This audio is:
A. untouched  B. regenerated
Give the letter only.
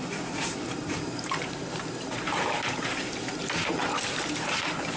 B